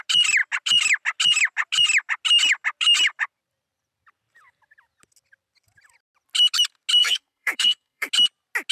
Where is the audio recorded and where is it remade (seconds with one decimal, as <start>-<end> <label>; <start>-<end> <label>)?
0.0-7.0 recorded; 7.0-8.1 remade; 8.1-8.7 recorded

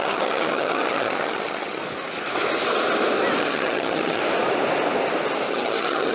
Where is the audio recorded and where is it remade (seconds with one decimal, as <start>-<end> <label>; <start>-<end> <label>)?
0.0-1.8 remade; 1.8-3.4 recorded; 3.4-4.2 remade; 4.2-5.5 recorded; 5.5-6.1 remade

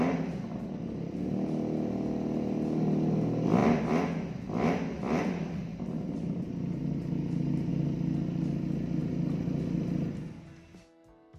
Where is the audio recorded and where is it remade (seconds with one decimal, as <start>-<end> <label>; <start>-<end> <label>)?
0.0-5.7 recorded; 5.7-7.7 remade; 7.7-9.0 recorded; 9.0-9.6 remade; 9.6-11.4 recorded

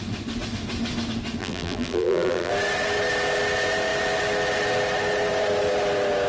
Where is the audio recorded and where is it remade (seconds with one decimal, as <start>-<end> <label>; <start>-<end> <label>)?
0.0-1.4 recorded; 1.4-2.5 remade; 2.5-6.3 recorded

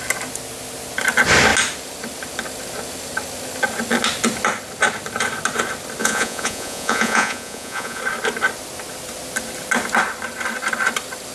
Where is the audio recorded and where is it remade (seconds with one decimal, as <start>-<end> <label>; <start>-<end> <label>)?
0.0-6.0 recorded; 6.0-8.0 remade; 8.0-11.3 recorded

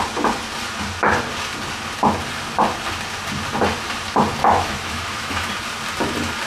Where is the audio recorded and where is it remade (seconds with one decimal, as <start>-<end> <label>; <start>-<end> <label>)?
0.0-4.4 recorded; 4.4-5.5 remade; 5.5-6.5 recorded